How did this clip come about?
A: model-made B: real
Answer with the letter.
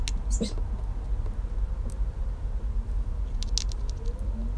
B